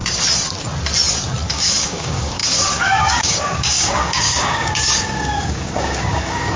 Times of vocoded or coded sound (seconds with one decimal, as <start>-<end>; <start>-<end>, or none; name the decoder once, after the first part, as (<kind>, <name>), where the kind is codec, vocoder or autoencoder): 1.5-6.6 (codec, DAC)